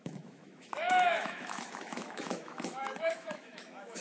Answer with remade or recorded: remade